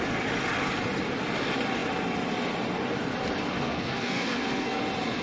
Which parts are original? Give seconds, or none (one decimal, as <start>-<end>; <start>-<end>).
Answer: 0.0-3.5; 4.8-5.2